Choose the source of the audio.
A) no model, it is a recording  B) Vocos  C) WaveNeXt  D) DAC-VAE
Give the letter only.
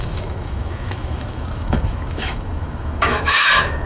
D